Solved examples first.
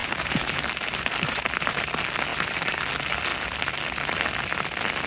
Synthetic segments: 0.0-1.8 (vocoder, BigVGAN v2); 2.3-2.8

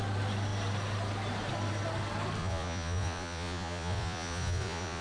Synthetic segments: 2.4-5.0 (vocoder, Vocos)

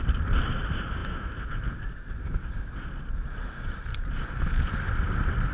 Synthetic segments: none

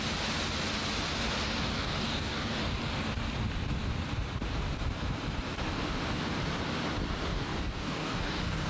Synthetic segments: 1.7-2.6 (codec, DAC); 7.3-8.7

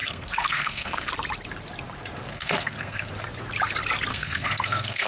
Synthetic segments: 0.0-1.1 (codec, SNAC); 2.3-3.1; 4.1-5.1

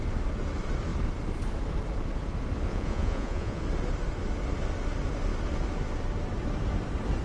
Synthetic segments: 2.7-3.6 (vocoder, Vocos)

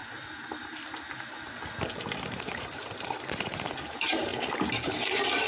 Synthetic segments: 2.2-4.3 (vocoder, BigVGAN v2); 5.1-5.5

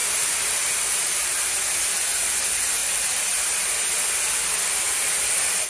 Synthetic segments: 0.0-1.5 (vocoder, BigVGAN v2); 2.8-3.7